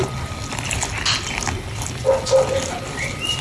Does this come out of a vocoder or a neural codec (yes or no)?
no